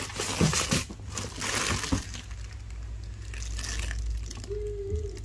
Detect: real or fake real